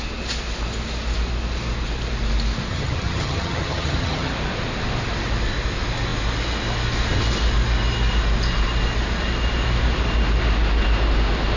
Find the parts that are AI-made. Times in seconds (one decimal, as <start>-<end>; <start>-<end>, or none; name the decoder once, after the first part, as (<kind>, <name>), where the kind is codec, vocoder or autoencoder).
2.7-4.3 (vocoder, HiFi-GAN)